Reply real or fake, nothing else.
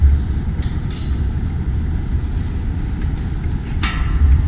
real